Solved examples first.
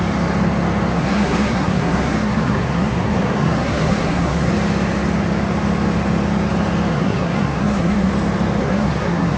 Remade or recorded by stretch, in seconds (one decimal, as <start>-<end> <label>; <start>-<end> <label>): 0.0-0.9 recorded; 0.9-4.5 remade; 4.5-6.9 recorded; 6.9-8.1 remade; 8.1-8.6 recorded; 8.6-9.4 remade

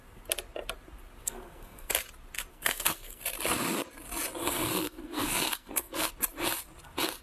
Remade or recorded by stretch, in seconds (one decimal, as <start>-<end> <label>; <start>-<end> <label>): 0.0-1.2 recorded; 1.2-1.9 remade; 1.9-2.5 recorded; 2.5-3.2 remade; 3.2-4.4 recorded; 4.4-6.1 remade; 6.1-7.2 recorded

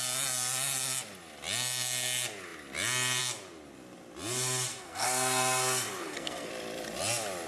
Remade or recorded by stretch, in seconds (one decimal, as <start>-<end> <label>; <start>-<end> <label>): 0.0-4.7 recorded; 4.7-6.5 remade; 6.5-7.5 recorded